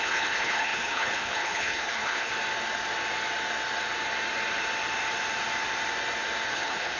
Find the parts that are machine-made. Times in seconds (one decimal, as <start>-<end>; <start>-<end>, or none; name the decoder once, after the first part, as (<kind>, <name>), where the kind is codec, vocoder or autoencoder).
0.0-2.3 (codec, HILCodec); 6.5-7.0